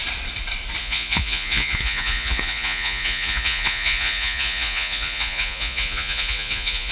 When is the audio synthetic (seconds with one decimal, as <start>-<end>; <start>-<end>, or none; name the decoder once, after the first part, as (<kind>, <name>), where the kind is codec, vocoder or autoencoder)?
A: 0.8-6.9 (vocoder, Vocos)